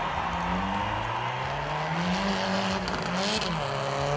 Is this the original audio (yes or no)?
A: yes